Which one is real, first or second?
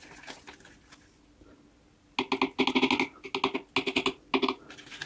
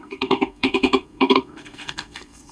first